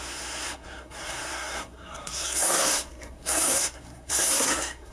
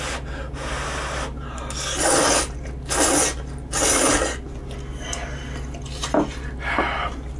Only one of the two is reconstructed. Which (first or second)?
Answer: first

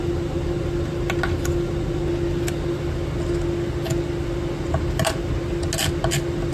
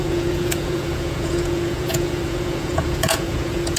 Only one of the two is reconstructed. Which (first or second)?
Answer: second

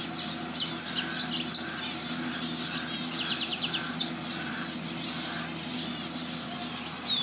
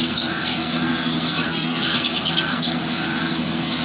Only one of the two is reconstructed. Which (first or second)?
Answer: second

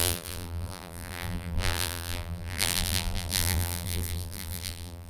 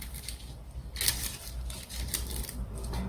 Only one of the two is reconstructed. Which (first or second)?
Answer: first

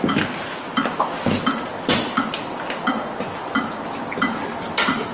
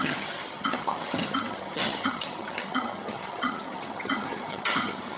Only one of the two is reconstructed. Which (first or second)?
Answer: second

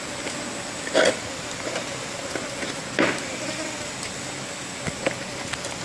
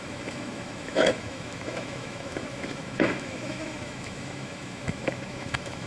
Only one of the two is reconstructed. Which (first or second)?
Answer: second